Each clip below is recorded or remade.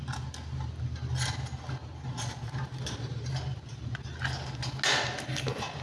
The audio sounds recorded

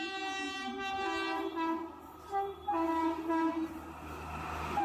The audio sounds recorded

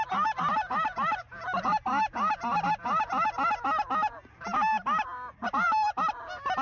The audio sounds recorded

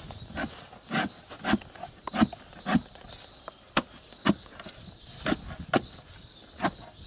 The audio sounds recorded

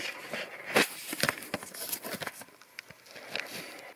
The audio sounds recorded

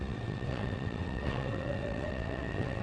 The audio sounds remade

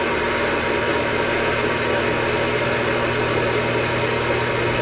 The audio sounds recorded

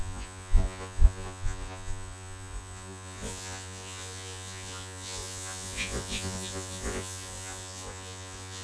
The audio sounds remade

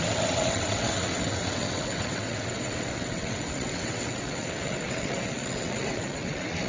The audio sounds remade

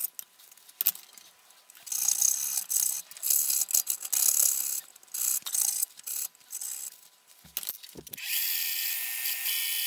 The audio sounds recorded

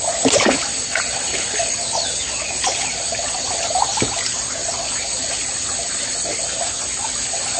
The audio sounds recorded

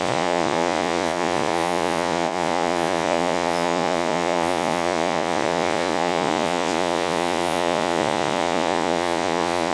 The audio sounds remade